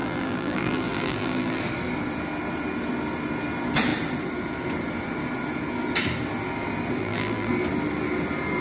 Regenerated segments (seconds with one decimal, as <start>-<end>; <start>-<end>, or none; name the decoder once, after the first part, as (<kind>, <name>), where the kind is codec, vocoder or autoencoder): 0.0-1.6 (vocoder, BigVGAN v2); 7.0-7.5